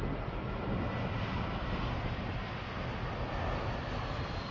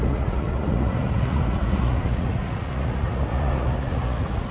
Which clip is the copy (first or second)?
second